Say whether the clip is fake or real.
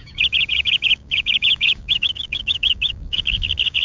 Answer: fake